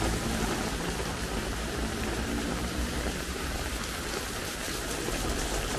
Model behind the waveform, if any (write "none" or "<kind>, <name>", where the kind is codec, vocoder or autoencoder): vocoder, BigVGAN v2